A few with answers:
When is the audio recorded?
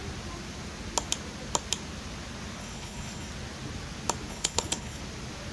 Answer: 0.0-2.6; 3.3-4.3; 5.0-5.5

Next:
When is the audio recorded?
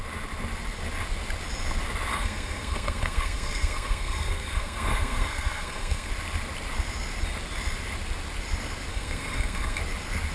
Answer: 0.0-2.1; 6.1-8.9; 9.8-10.3